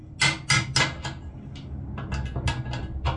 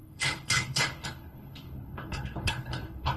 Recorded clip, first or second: first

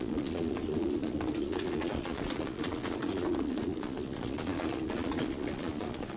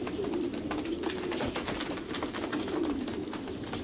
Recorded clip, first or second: second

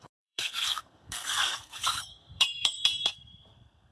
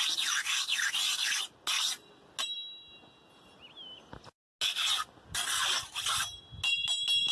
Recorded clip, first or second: second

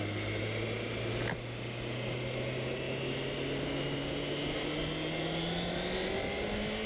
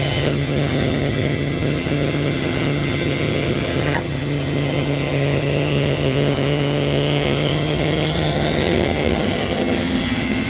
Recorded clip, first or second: first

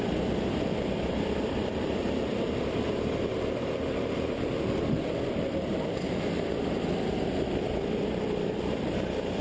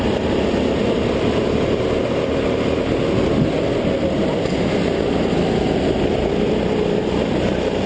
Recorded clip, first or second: second